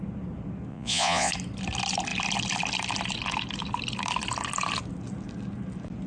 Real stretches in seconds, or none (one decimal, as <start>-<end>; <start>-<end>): 0.0-0.7; 1.3-6.1